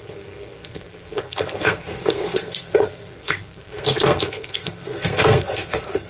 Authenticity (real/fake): fake